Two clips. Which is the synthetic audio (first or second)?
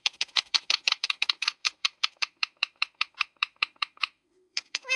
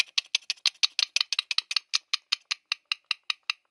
first